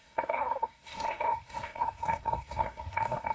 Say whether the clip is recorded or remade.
remade